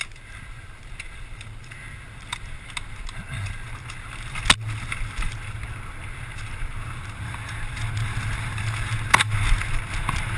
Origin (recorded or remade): recorded